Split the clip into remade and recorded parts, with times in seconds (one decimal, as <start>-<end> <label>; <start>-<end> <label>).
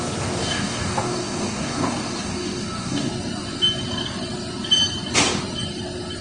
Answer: 0.0-0.4 recorded; 0.4-3.1 remade; 3.1-6.2 recorded